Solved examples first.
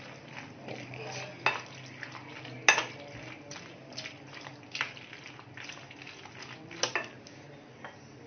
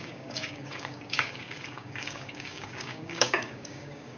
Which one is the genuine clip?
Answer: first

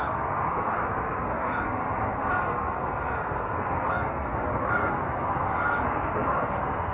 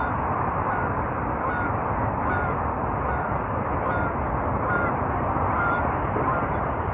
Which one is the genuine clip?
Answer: second